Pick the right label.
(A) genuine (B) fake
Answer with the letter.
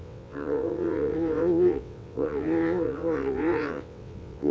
B